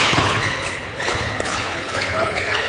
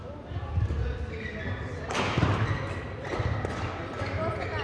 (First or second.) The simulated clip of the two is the first